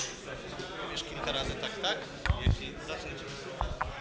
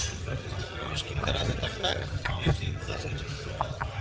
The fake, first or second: second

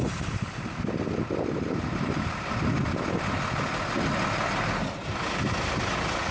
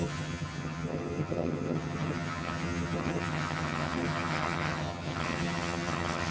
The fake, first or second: second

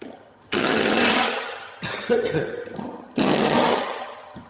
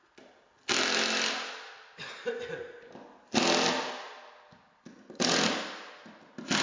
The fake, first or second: first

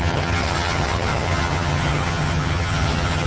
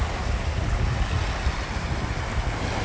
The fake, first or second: first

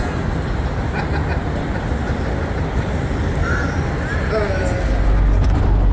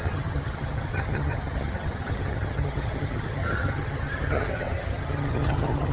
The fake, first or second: second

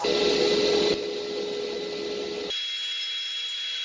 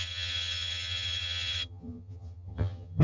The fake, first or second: second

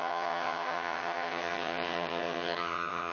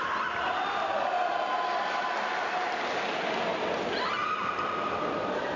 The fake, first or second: first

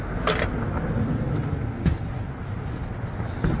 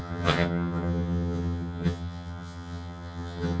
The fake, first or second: second